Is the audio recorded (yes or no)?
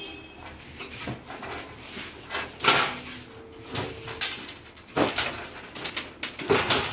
yes